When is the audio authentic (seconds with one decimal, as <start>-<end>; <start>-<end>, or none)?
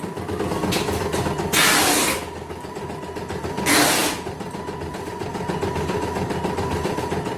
0.0-2.1; 2.7-7.4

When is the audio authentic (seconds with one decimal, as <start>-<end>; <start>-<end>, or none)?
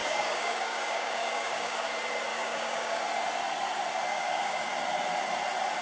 1.9-2.3; 3.0-4.1; 4.7-5.8